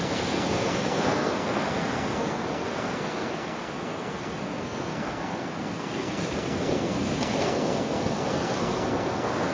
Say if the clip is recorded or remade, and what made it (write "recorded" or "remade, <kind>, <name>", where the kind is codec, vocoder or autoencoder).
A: remade, codec, SNAC